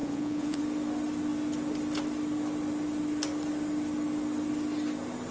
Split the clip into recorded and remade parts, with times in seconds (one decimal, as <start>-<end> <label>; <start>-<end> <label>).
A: 0.0-0.6 remade; 0.6-5.3 recorded